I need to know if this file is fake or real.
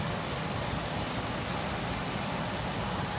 real